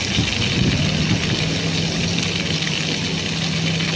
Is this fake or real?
real